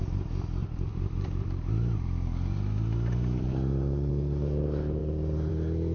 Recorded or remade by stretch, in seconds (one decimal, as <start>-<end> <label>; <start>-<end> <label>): 0.0-0.6 recorded; 0.6-4.1 remade; 4.1-5.9 recorded